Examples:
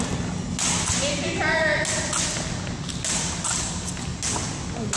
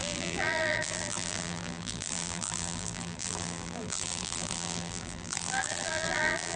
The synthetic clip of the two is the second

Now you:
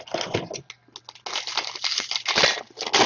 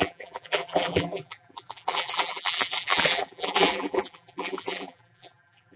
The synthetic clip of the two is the second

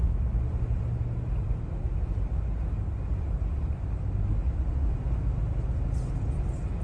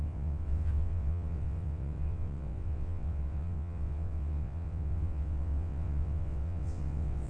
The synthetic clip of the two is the second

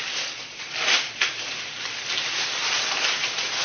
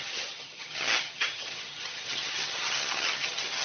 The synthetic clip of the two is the second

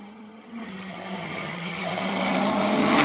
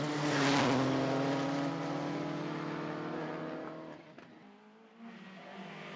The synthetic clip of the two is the first